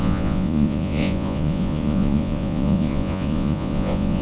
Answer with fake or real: fake